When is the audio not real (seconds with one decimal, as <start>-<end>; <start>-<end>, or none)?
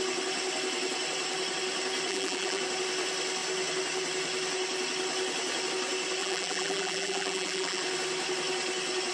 2.1-2.6; 6.2-7.8